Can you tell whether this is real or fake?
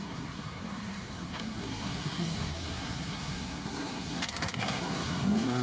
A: fake